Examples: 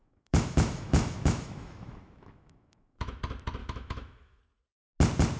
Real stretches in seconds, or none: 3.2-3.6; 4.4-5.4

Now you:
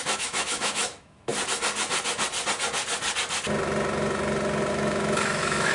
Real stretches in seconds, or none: 1.3-4.7

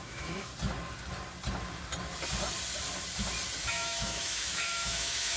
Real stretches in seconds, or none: 0.5-3.7

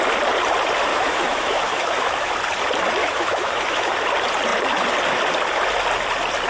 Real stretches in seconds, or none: 0.0-0.9; 2.3-3.0; 3.9-6.5